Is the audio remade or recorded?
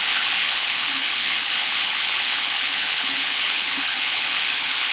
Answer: remade